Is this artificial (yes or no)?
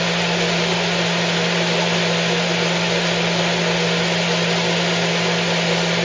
no